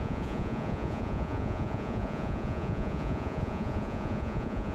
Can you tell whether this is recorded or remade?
remade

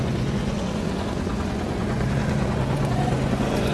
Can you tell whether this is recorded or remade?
remade